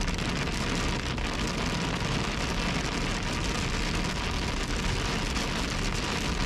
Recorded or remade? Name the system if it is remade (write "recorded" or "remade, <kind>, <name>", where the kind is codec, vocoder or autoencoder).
recorded